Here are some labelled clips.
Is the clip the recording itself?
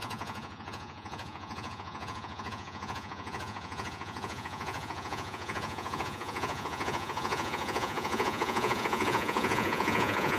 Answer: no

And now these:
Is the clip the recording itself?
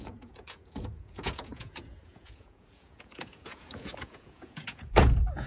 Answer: no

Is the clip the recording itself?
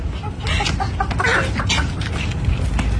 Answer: yes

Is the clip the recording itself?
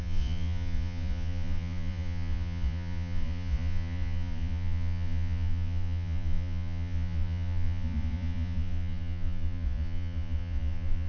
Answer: no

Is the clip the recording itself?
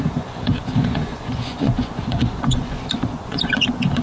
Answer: no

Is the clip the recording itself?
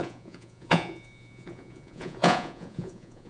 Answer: no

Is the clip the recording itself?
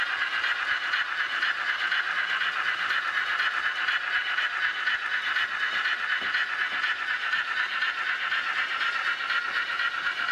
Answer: yes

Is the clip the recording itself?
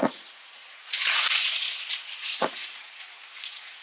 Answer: no